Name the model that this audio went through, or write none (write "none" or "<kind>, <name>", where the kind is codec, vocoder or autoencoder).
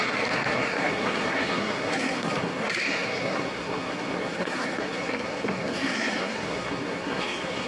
codec, SNAC